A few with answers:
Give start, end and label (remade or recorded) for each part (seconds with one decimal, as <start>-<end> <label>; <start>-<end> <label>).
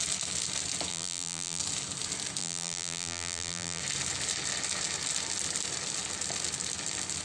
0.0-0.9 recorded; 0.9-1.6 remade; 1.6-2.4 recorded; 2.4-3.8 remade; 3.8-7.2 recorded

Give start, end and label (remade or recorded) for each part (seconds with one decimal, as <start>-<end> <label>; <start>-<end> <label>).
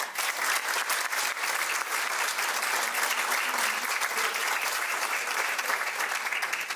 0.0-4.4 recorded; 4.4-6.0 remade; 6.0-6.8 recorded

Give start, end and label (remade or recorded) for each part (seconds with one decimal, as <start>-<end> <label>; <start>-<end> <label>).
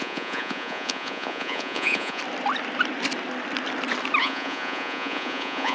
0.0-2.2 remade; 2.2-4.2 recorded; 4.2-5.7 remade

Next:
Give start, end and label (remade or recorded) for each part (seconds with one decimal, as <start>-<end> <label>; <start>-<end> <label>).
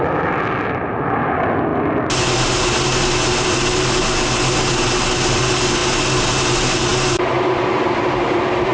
0.0-8.7 recorded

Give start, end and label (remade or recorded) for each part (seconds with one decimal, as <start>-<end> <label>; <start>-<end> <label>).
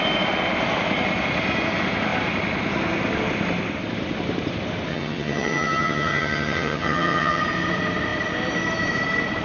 0.0-4.9 recorded; 4.9-7.4 remade; 7.4-9.4 recorded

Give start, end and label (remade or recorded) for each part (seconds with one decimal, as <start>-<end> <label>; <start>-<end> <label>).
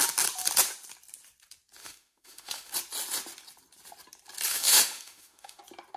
0.0-1.8 recorded; 1.8-2.7 remade; 2.7-4.5 recorded; 4.5-5.6 remade; 5.6-6.0 recorded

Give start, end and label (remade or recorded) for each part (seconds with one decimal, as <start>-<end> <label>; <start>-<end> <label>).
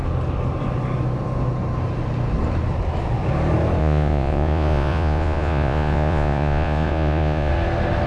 0.0-3.8 recorded; 3.8-7.5 remade; 7.5-8.1 recorded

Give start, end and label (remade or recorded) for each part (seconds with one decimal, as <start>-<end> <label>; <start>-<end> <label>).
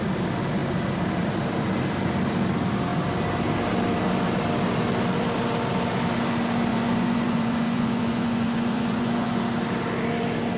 0.0-6.7 recorded; 6.7-9.4 remade; 9.4-10.6 recorded